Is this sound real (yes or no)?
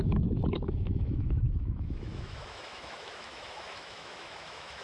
no